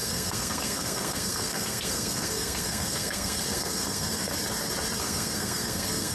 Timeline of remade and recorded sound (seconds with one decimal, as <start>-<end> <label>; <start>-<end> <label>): 0.0-4.3 remade; 4.3-5.0 recorded; 5.0-6.1 remade